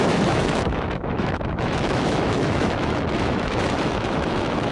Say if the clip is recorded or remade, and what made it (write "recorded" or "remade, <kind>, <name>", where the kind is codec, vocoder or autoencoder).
remade, autoencoder, DAC-VAE